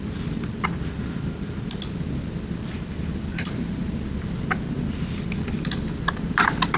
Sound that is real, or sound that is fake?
real